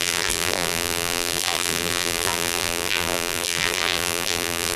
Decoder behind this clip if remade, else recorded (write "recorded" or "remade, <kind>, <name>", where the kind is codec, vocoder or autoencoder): remade, vocoder, BigVGAN v2